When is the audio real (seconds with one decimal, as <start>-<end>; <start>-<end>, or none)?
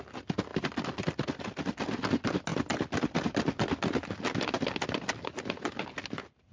0.0-6.5